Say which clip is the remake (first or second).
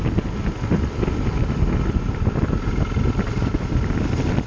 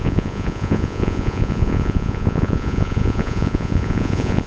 second